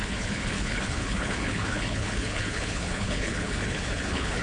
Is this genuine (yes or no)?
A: no